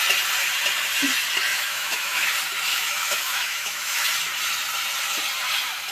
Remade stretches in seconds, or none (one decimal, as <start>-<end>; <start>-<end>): 1.5-2.3; 2.7-4.1